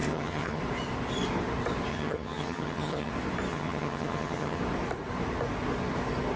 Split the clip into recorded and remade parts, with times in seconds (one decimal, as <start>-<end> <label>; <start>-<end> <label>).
0.0-0.6 remade; 0.6-1.9 recorded; 1.9-3.1 remade; 3.1-3.5 recorded; 3.5-4.6 remade; 4.6-6.4 recorded

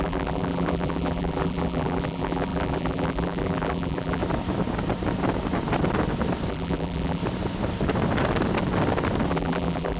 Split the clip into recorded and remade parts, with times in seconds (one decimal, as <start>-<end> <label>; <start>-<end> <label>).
0.0-4.2 remade; 4.2-6.5 recorded; 6.5-7.2 remade; 7.2-9.3 recorded; 9.3-10.0 remade

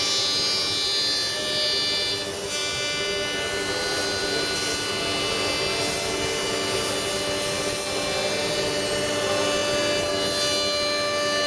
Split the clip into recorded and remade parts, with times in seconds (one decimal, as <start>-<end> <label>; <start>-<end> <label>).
0.0-11.5 recorded

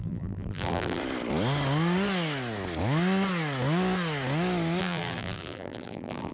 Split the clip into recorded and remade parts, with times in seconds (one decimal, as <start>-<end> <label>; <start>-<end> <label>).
0.0-1.0 remade; 1.0-4.8 recorded; 4.8-6.3 remade

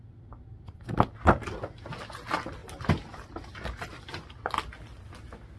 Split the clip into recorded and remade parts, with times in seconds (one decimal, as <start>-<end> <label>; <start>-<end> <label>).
0.0-2.6 recorded; 2.6-4.0 remade; 4.0-5.6 recorded